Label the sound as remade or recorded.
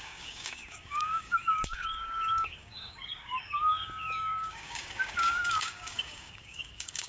remade